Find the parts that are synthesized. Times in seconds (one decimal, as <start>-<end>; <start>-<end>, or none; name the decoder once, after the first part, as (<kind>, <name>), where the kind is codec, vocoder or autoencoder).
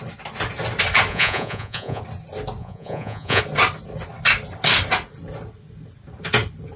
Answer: 1.1-2.0 (vocoder, Vocos); 2.6-3.4